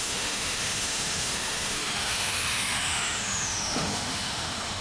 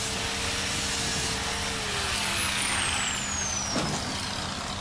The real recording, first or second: second